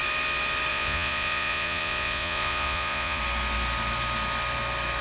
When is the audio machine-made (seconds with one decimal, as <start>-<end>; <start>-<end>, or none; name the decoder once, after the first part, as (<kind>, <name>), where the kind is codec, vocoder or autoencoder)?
0.7-3.2 (vocoder, Vocos)